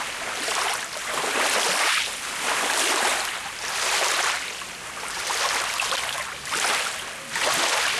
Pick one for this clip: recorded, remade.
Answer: recorded